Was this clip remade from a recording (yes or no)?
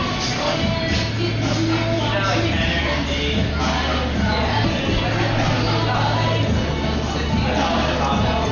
no